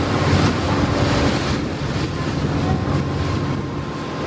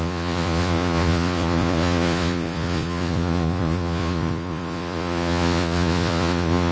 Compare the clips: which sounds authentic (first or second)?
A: first